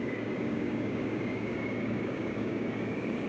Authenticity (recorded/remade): remade